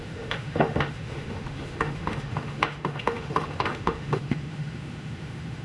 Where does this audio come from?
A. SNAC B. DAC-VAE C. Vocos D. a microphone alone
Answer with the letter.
B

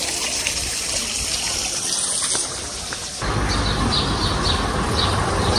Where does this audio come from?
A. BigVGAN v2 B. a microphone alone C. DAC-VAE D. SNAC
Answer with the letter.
B